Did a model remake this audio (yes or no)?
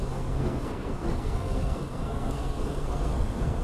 yes